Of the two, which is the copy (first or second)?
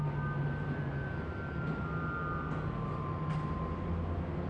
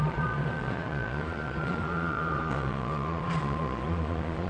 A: second